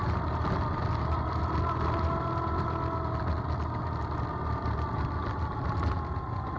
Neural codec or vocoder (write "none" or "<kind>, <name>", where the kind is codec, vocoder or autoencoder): none